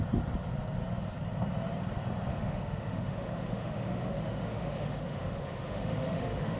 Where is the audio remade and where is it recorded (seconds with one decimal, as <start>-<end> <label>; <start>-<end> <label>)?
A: 0.0-2.3 recorded; 2.3-6.6 remade